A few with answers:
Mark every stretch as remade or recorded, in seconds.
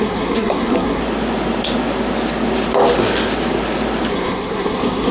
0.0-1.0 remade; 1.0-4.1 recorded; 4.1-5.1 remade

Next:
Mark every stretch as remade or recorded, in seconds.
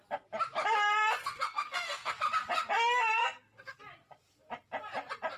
0.0-1.2 recorded; 1.2-2.1 remade; 2.1-3.2 recorded; 3.2-3.8 remade; 3.8-5.4 recorded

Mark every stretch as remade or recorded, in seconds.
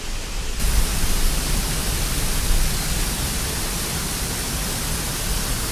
0.0-5.7 recorded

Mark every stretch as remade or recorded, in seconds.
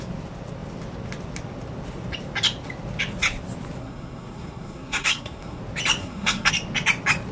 0.0-3.8 recorded; 3.8-5.6 remade; 5.6-6.0 recorded; 6.0-6.5 remade; 6.5-7.3 recorded